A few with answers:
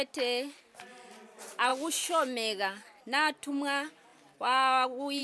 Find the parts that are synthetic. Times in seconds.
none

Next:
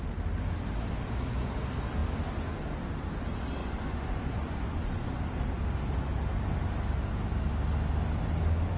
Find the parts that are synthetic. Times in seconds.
3.6-5.2 (vocoder, Vocos)

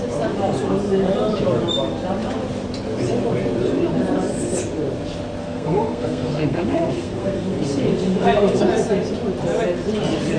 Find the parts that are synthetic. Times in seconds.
5.4-8.6 (codec, SNAC)

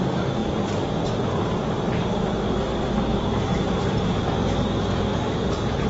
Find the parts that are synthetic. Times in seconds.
0.4-2.5 (vocoder, BigVGAN v2); 3.1-4.0; 5.1-5.9

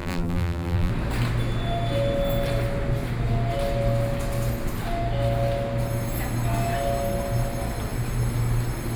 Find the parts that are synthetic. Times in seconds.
0.0-0.9 (vocoder, BigVGAN v2)

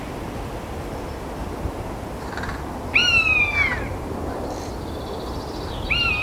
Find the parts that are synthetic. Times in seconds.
1.4-1.9 (vocoder, BigVGAN v2); 3.0-4.7